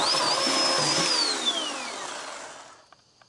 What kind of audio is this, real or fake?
real